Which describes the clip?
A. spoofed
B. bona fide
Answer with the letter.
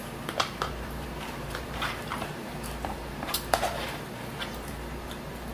A